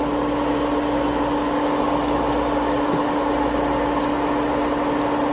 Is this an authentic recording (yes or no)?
yes